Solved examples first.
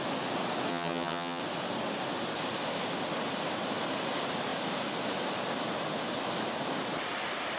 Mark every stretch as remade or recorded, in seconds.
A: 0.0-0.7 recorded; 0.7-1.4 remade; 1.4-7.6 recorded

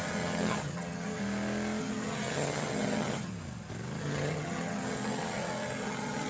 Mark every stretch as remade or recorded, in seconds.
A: 0.0-1.2 remade; 1.2-1.8 recorded; 1.8-3.3 remade; 3.3-4.0 recorded; 4.0-6.3 remade